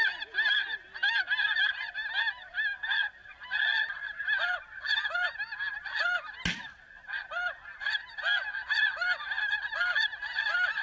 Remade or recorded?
recorded